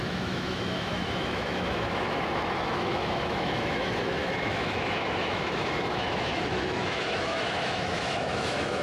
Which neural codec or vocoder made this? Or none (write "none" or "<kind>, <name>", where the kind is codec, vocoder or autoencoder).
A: autoencoder, DAC-VAE